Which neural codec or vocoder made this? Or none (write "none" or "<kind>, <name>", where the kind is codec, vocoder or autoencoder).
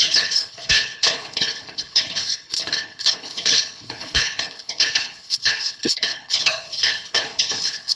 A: codec, HILCodec